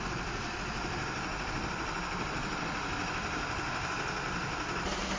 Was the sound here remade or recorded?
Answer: remade